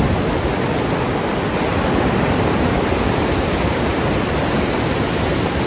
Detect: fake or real real